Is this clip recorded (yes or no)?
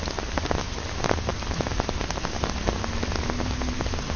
yes